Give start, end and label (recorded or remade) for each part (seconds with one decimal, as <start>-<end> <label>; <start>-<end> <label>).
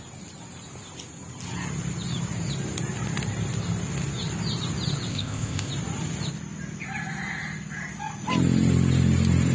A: 0.0-5.1 recorded; 5.1-5.7 remade; 5.7-9.5 recorded